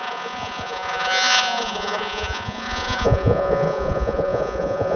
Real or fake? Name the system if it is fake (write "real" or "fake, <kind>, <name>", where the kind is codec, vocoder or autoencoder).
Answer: fake, vocoder, Vocos